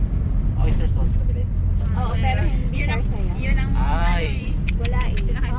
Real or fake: fake